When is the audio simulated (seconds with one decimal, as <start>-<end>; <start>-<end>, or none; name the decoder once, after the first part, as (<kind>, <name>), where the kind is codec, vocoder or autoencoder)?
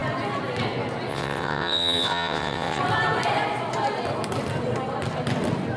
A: 1.1-2.8 (vocoder, WaveNeXt)